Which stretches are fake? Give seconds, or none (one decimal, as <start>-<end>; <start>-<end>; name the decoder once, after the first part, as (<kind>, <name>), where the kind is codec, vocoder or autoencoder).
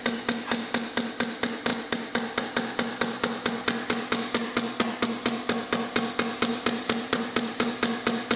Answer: 6.5-7.7 (vocoder, BigVGAN v2)